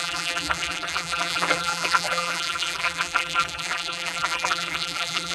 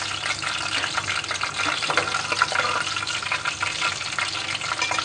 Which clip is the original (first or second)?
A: second